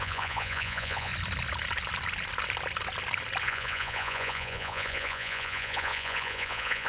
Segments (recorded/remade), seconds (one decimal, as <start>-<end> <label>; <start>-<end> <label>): 0.0-1.1 remade; 1.1-3.4 recorded; 3.4-6.9 remade